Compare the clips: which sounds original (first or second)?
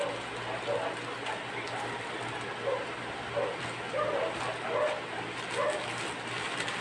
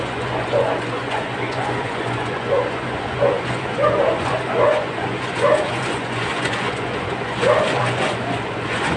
first